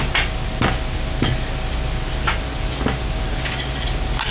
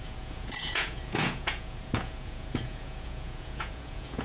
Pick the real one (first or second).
first